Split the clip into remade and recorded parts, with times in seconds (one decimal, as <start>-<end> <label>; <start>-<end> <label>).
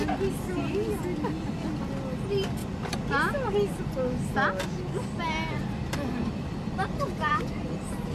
0.0-8.1 recorded